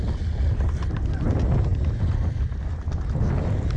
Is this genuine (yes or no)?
yes